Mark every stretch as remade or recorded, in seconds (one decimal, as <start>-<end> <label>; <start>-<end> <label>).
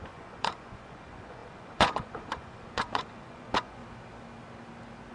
0.0-3.8 remade; 3.8-5.1 recorded